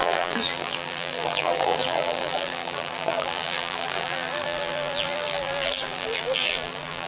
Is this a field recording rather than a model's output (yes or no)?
no